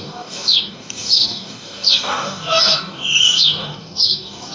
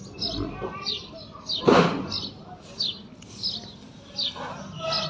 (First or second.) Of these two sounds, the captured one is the second